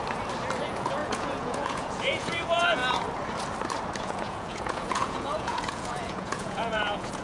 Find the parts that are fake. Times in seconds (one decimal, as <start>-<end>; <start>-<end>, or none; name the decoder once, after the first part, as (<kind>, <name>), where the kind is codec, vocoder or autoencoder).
0.6-2.8 (vocoder, Vocos); 4.0-7.2